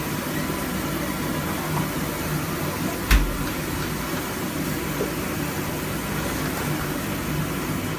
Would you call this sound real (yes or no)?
yes